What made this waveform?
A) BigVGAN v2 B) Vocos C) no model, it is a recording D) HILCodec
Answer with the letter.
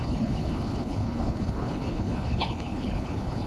D